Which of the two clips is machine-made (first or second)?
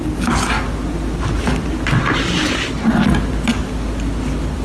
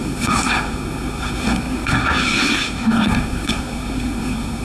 second